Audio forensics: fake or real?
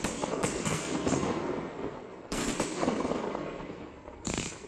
fake